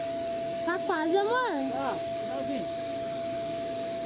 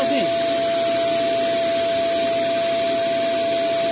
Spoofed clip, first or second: first